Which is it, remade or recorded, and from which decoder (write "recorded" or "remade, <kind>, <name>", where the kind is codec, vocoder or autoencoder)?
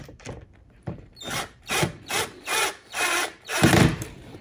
remade, vocoder, BigVGAN v2